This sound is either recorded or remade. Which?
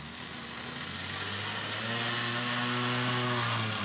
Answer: recorded